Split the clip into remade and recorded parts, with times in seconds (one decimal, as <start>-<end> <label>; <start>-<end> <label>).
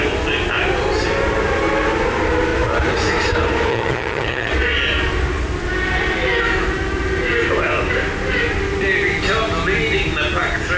0.0-3.7 recorded; 3.7-4.5 remade; 4.5-10.8 recorded